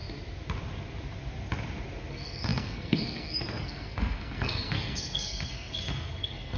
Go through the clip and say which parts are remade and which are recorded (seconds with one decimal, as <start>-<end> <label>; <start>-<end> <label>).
0.0-2.1 recorded; 2.1-6.6 remade